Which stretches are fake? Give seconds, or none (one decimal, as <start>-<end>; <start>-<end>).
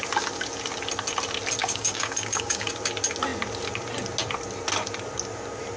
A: 1.6-2.7